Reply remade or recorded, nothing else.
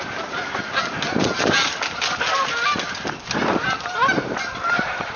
remade